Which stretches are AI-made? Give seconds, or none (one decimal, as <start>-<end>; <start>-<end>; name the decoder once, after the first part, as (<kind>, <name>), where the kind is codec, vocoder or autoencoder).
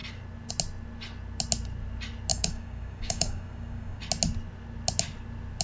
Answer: 2.3-4.0 (codec, DAC)